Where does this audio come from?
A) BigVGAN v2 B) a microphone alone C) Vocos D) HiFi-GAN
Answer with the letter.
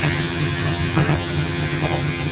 D